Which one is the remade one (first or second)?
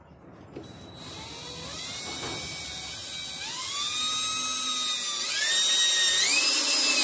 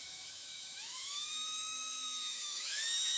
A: second